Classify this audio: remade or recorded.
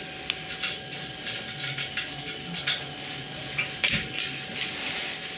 recorded